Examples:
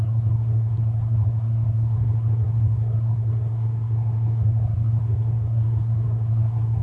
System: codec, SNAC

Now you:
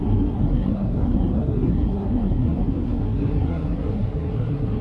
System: codec, SNAC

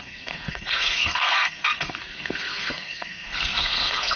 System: codec, SNAC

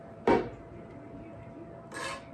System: none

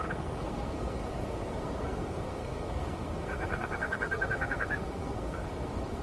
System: codec, SNAC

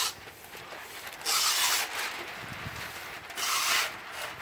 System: none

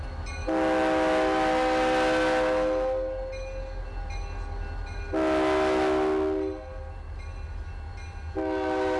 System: none